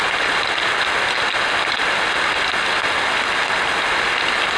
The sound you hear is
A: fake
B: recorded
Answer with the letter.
B